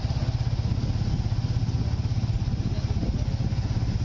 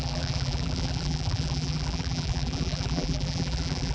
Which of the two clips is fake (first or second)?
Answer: second